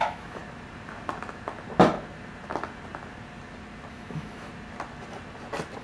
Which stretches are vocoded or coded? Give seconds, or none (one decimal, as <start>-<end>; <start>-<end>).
0.0-0.4; 3.9-4.5